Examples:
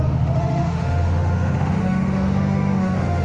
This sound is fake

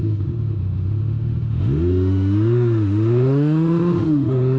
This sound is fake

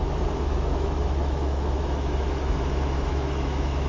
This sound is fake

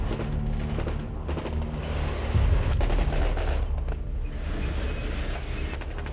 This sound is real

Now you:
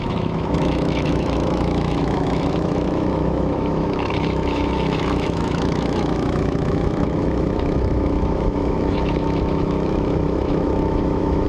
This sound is fake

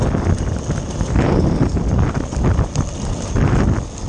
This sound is real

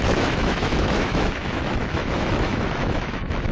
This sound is fake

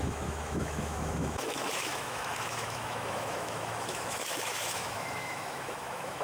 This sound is fake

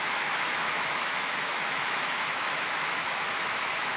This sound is fake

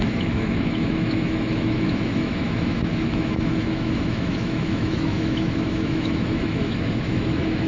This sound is fake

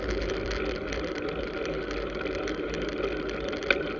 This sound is real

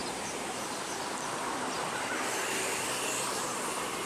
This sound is real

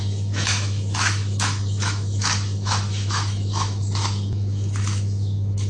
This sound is fake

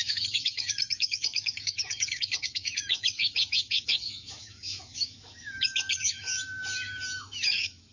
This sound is fake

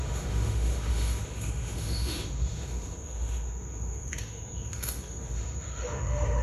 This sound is fake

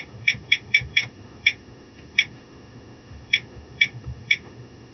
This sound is fake